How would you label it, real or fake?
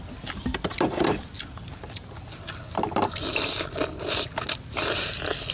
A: real